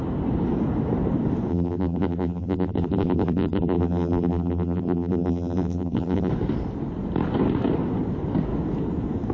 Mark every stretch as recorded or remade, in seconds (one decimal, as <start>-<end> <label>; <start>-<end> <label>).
0.0-1.5 recorded; 1.5-6.3 remade; 6.3-9.3 recorded